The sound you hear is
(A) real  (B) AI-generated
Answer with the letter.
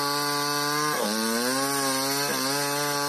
A